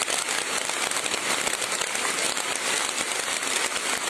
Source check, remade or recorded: recorded